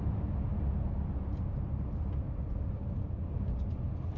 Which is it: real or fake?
real